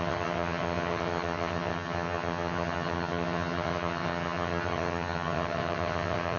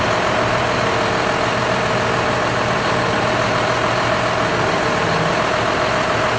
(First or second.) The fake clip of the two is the first